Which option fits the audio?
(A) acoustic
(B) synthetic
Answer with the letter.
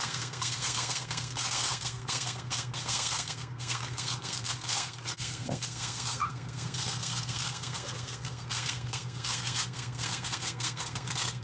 B